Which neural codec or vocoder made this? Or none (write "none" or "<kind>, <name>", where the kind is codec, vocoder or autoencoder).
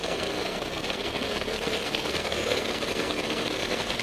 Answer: codec, SNAC